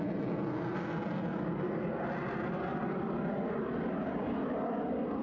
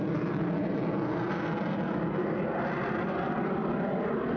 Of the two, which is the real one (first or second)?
first